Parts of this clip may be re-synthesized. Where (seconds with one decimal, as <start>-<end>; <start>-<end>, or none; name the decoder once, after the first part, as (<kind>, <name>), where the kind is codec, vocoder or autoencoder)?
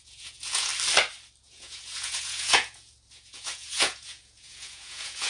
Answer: 0.0-0.7 (vocoder, Vocos); 1.4-5.3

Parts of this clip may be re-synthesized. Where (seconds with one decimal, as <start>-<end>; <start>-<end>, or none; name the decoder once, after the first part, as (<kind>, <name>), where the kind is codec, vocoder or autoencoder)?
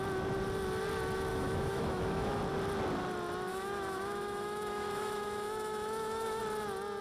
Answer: 1.3-2.4 (autoencoder, DAC-VAE); 3.5-6.4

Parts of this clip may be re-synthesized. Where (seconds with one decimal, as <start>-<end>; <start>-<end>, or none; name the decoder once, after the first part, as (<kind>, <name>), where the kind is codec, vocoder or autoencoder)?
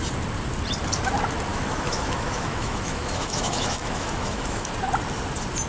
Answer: 1.5-4.7 (autoencoder, DAC-VAE)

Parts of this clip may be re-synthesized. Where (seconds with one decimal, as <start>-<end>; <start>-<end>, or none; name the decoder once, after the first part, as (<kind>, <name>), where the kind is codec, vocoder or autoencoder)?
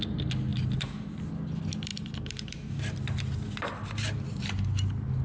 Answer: 0.5-1.2 (vocoder, BigVGAN v2); 1.9-2.7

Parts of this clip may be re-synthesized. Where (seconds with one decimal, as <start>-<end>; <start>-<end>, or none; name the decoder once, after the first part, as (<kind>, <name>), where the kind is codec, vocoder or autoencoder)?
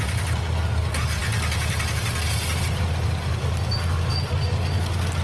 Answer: none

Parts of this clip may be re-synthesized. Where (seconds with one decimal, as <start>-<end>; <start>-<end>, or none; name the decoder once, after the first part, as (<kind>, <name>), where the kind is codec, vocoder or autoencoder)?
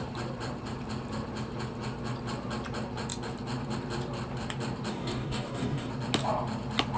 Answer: 4.9-5.9 (codec, DAC)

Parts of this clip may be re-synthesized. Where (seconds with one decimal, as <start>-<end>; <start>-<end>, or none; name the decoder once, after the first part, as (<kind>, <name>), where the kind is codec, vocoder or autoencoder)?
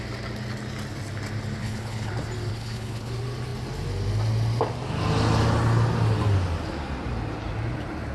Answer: 1.6-2.1 (codec, HILCodec); 2.5-3.1